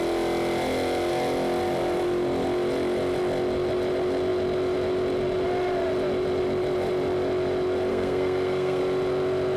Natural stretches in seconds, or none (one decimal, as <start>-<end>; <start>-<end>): 0.0-7.9; 8.8-9.6